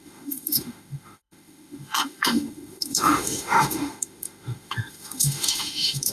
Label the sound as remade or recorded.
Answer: remade